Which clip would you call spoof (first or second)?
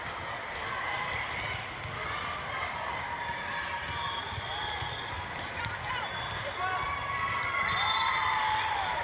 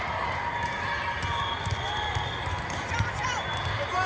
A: first